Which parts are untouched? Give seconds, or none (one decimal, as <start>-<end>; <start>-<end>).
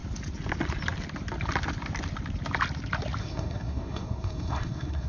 0.0-3.2